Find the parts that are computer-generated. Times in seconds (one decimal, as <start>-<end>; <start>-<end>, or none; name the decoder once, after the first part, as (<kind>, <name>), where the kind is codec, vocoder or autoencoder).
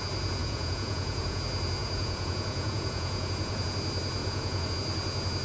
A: 0.4-1.4 (vocoder, Vocos); 1.8-3.6; 4.2-4.7